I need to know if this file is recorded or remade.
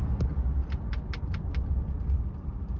recorded